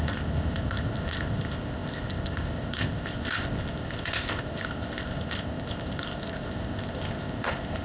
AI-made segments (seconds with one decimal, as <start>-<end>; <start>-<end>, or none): 0.0-7.8